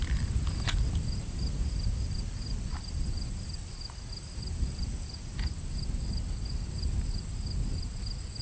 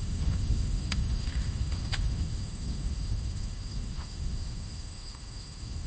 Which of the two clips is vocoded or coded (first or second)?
second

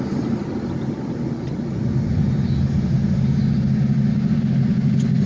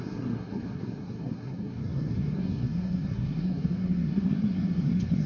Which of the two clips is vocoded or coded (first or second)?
second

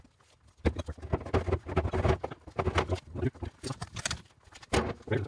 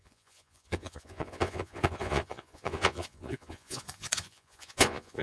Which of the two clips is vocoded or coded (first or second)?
second